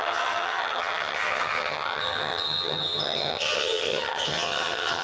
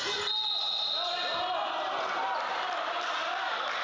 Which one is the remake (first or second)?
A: first